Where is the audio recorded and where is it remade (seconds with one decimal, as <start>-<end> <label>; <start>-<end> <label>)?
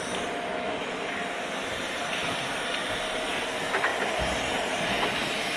0.0-1.6 recorded; 1.6-2.7 remade; 2.7-3.9 recorded; 3.9-4.8 remade; 4.8-5.6 recorded